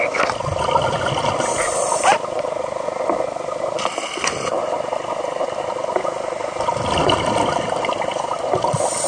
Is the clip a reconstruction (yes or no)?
no